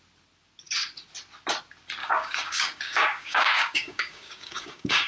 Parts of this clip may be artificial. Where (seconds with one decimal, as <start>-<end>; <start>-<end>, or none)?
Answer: 2.0-5.1